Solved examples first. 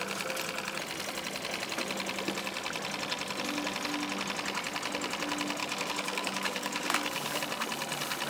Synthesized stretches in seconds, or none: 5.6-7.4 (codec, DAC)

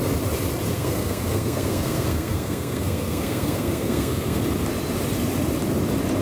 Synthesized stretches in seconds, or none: 0.7-4.4 (codec, SNAC)

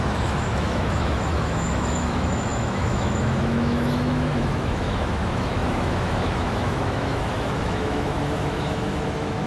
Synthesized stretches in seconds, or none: 0.0-9.5 (autoencoder, DAC-VAE)

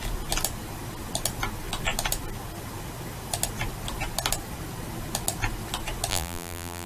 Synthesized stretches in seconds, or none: 6.1-6.9 (vocoder, BigVGAN v2)

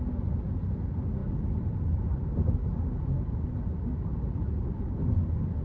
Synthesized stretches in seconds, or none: none

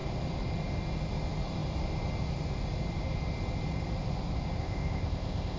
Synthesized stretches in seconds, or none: 4.6-5.6 (codec, ZipCodec)